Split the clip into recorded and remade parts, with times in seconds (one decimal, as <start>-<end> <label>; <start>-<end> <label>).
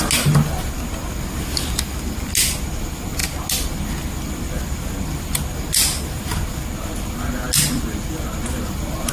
0.0-9.1 recorded